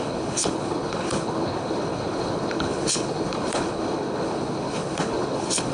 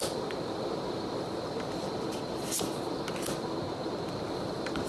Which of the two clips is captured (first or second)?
second